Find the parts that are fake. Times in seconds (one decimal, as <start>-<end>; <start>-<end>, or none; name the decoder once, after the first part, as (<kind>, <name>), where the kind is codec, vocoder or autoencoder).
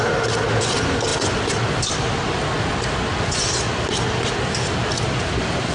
none